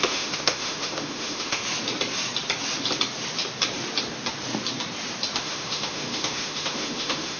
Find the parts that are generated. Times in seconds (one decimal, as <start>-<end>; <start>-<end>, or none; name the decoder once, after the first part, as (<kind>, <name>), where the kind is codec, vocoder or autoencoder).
0.0-1.6 (autoencoder, DAC-VAE); 5.4-7.4